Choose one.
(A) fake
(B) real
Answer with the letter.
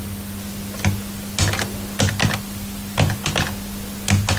B